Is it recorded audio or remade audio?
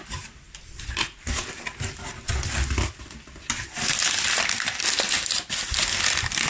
recorded